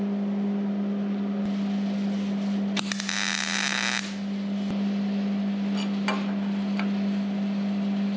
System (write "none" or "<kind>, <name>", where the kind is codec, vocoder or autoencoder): none